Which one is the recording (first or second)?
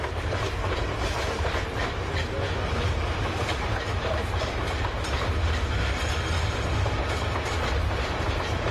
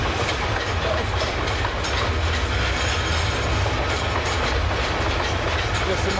second